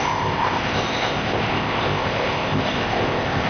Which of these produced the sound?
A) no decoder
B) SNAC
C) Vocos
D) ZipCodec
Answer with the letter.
D